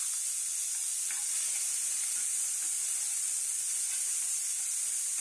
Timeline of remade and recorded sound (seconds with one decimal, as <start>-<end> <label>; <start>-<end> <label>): 0.0-5.2 recorded